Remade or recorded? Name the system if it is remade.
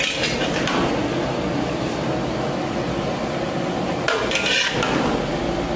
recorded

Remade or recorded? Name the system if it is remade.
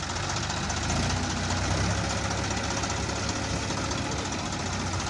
recorded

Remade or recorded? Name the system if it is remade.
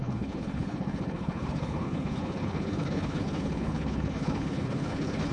remade, codec, HILCodec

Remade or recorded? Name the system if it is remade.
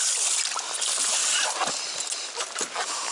recorded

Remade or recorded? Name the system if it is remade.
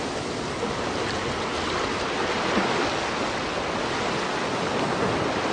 recorded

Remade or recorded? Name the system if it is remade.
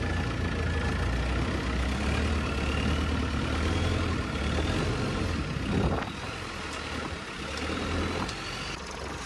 recorded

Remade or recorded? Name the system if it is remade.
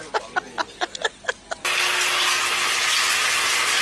recorded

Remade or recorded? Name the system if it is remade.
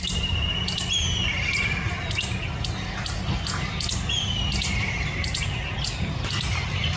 recorded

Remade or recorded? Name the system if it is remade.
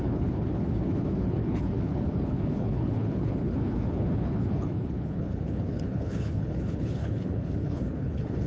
remade, codec, HILCodec